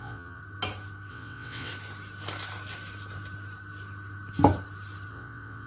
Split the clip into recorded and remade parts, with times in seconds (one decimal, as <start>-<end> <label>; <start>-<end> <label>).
0.0-0.4 remade; 0.4-1.1 recorded; 1.1-1.7 remade; 1.7-5.1 recorded; 5.1-5.7 remade